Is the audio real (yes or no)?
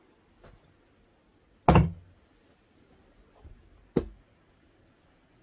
yes